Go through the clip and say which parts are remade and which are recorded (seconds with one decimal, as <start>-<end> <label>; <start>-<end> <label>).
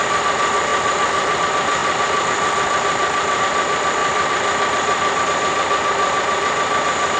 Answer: 0.0-0.7 recorded; 0.7-1.4 remade; 1.4-1.8 recorded; 1.8-3.4 remade; 3.4-4.0 recorded; 4.0-5.2 remade; 5.2-7.2 recorded